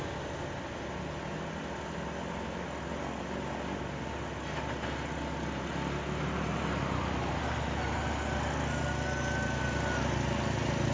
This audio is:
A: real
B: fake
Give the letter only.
A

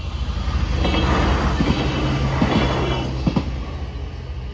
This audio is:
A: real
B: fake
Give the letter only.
A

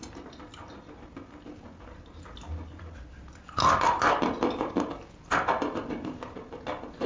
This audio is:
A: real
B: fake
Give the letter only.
A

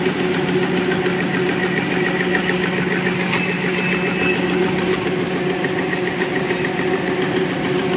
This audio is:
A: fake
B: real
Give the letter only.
B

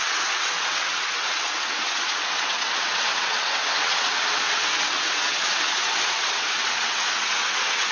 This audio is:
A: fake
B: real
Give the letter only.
A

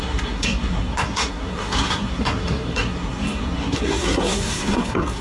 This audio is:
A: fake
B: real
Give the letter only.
A